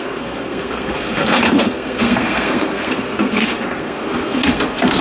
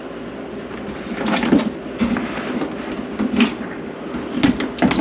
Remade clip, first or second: first